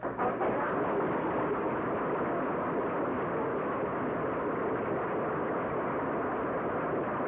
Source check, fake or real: real